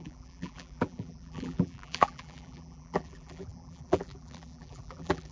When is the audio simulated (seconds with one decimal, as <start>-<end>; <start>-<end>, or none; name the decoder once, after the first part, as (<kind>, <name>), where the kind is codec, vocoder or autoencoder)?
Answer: 0.0-5.3 (vocoder, BigVGAN v2)